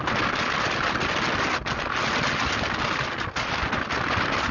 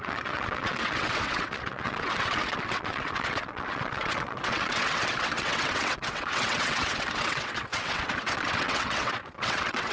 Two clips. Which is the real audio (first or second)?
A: first